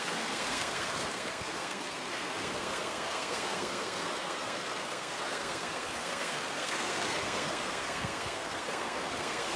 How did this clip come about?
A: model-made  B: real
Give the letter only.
A